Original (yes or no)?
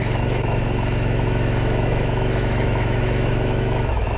no